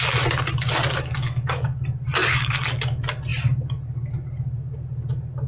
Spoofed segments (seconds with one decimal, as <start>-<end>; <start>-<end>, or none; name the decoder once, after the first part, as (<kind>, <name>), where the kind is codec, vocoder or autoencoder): 1.2-1.8 (codec, DAC); 2.2-2.7